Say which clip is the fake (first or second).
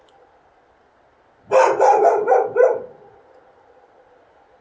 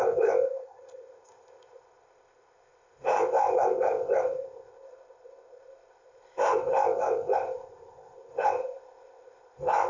second